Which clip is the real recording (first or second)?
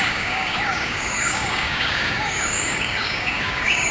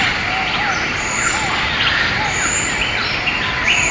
second